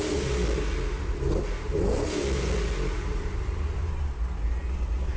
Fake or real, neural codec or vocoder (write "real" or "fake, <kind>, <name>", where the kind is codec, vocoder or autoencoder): real